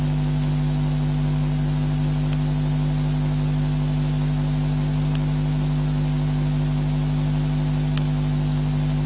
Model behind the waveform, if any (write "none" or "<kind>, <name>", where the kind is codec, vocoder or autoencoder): none